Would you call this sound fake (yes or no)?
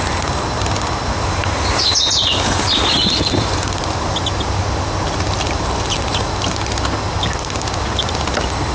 no